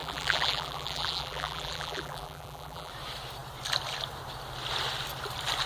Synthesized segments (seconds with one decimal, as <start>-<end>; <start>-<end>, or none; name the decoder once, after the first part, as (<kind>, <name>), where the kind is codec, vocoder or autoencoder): 0.0-2.9 (vocoder, BigVGAN v2)

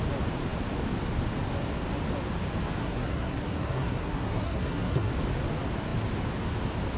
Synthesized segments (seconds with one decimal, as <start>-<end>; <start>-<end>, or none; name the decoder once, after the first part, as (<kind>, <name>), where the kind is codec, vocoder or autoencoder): 2.8-5.1 (codec, SNAC)